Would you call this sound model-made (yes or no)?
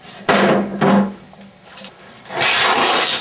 no